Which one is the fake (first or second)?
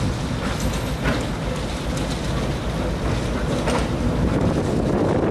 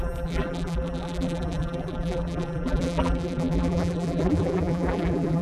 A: second